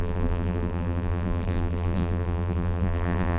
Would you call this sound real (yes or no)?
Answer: no